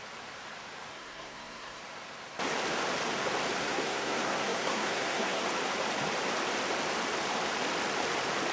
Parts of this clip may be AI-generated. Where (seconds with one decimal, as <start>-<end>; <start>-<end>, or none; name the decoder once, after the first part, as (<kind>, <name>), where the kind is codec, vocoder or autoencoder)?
0.9-1.8 (codec, SNAC); 3.6-5.4

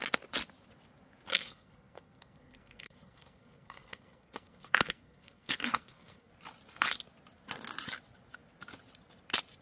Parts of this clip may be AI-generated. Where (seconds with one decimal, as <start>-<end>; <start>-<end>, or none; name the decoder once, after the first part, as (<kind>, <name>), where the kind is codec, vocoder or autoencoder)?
1.3-6.3 (codec, SNAC)

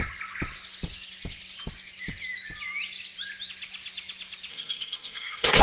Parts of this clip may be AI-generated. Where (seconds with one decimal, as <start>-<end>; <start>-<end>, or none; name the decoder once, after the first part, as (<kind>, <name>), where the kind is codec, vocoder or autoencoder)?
4.5-5.6 (codec, SNAC)

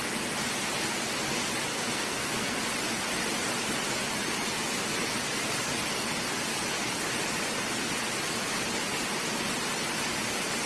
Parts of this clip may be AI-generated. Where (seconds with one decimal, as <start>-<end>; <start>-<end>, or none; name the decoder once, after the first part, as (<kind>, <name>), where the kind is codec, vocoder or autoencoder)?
1.7-2.6 (codec, SNAC)

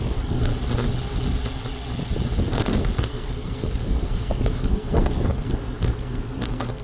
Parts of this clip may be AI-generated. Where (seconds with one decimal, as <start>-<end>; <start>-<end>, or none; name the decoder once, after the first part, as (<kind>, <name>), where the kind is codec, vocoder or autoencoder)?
0.0-0.5 (codec, SNAC); 2.5-6.8